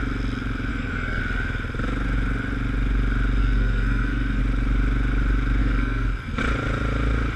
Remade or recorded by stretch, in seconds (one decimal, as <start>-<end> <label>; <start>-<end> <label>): 0.0-0.7 recorded; 0.7-1.2 remade; 1.2-3.4 recorded; 3.4-4.4 remade; 4.4-5.6 recorded; 5.6-6.4 remade; 6.4-7.4 recorded